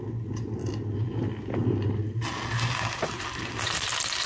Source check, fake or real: real